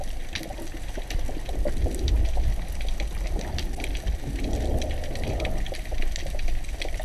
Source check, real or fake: real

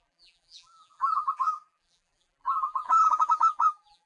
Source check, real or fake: fake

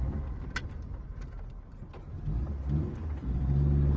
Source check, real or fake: real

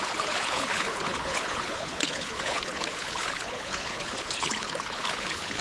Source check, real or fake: fake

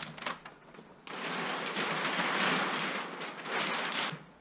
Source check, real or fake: real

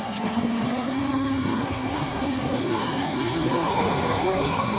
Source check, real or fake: fake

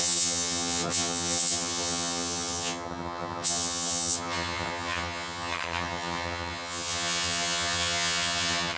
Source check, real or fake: fake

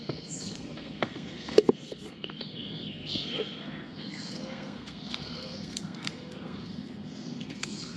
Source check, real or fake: fake